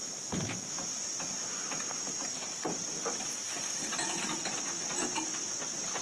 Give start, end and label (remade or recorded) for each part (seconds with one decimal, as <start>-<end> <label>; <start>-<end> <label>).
0.0-6.0 recorded